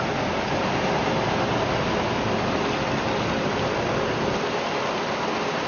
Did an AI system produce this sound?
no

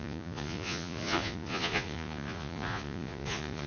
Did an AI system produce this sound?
yes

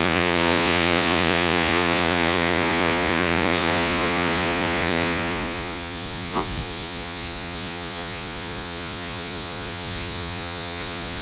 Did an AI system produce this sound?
yes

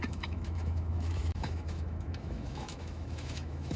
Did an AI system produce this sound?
yes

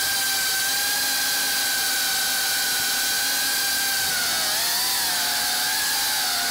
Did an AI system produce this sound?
no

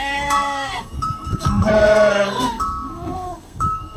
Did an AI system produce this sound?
yes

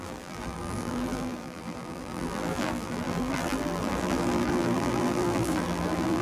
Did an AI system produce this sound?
yes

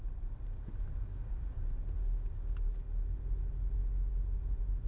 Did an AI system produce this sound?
no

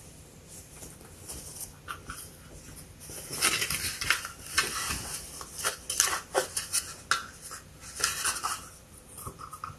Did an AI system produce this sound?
no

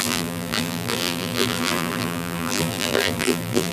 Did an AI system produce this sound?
yes